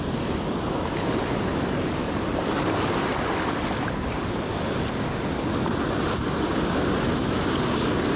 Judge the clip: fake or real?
real